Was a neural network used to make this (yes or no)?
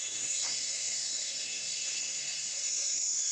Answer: yes